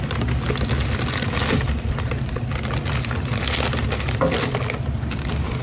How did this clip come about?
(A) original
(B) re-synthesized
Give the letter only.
A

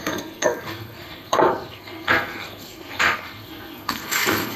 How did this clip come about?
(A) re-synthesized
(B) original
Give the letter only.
A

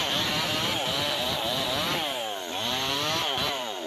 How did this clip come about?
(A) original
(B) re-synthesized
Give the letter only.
B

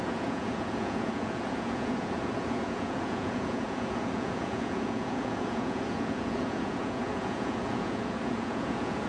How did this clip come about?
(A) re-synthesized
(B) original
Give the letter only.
A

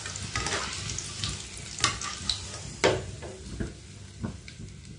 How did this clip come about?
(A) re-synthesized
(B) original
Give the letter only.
B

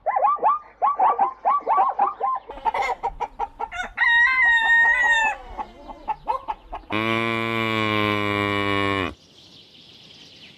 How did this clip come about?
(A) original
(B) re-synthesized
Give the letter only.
B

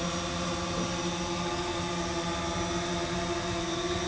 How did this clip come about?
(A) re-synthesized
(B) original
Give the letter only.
B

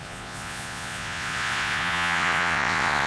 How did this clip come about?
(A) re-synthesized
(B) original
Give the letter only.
A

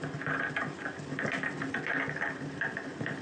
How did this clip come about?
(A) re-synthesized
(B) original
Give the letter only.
B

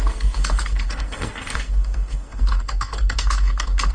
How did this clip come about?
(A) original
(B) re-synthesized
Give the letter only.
B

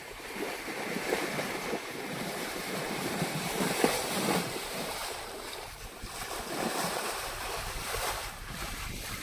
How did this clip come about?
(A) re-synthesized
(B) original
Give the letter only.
A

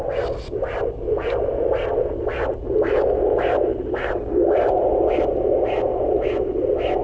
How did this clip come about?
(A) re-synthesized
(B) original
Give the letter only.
B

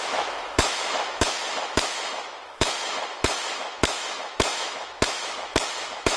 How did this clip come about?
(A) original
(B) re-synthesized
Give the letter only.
B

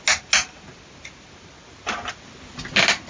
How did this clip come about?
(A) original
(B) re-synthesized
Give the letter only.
A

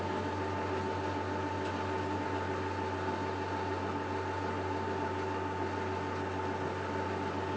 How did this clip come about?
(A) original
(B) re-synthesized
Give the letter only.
A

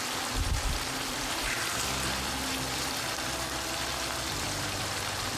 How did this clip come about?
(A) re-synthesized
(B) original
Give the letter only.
A